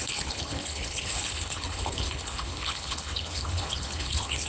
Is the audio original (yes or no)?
no